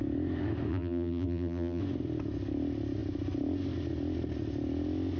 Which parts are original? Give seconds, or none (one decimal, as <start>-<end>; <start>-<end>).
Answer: 0.0-0.7; 1.8-5.2